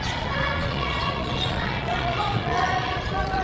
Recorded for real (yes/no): no